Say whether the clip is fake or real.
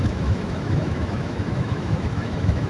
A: fake